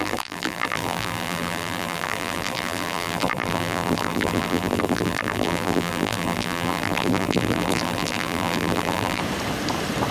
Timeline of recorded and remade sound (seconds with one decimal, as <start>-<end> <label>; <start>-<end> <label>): 0.0-9.2 remade; 9.2-10.1 recorded